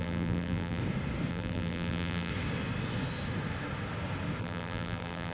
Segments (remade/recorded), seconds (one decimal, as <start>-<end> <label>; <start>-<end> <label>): 0.0-0.8 remade; 0.8-1.3 recorded; 1.3-2.3 remade; 2.3-4.4 recorded; 4.4-5.3 remade